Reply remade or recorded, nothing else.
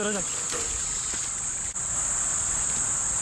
recorded